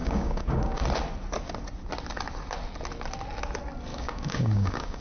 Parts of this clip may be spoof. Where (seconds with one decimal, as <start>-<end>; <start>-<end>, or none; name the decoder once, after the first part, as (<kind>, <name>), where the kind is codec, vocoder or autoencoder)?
0.0-0.8 (codec, DAC); 3.9-5.0